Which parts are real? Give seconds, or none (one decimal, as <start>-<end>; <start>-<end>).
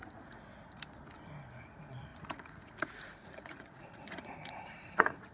0.0-2.1; 2.7-3.2